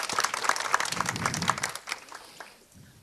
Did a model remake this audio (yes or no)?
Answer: no